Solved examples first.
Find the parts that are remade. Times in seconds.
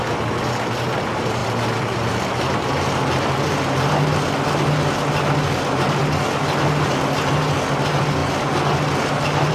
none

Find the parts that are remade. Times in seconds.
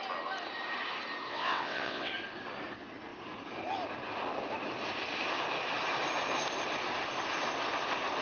1.3-2.1 (vocoder, WaveNeXt)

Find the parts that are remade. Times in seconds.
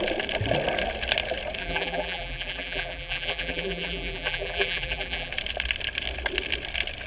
1.6-5.3 (vocoder, BigVGAN v2)